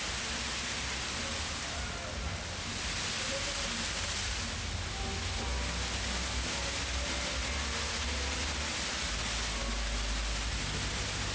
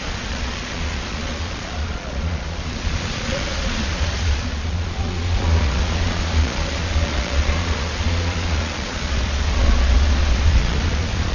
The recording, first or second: first